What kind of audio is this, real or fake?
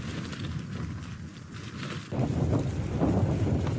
real